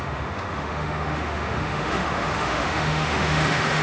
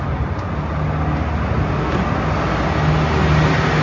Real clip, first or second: second